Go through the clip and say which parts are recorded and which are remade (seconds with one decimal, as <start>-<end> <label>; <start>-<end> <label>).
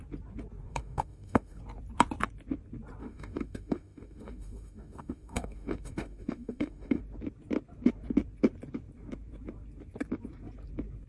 0.0-0.7 recorded; 0.7-1.6 remade; 1.6-3.0 recorded; 3.0-7.0 remade; 7.0-11.1 recorded